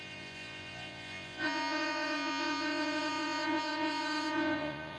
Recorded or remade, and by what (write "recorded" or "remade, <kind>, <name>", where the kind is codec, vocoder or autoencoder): remade, vocoder, Vocos